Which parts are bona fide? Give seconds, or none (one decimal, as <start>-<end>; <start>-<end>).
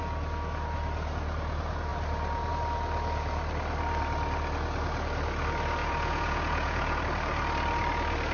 0.0-5.8; 7.0-8.3